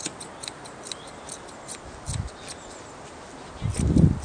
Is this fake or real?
real